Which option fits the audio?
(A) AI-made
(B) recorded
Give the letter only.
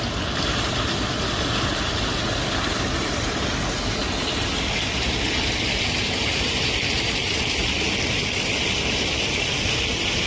B